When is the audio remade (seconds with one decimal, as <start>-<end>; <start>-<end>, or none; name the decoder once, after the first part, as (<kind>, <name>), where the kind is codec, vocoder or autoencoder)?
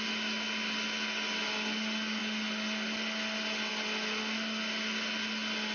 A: none